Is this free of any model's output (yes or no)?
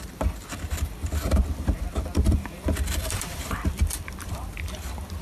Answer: no